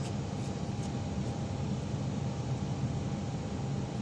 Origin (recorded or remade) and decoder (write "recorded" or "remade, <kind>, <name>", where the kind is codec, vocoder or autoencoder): recorded